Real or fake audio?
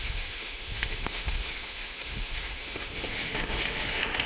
fake